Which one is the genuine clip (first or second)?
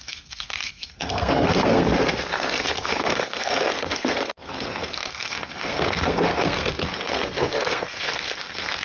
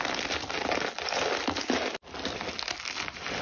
second